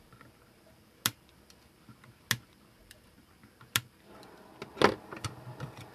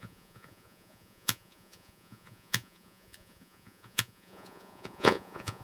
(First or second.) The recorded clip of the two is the first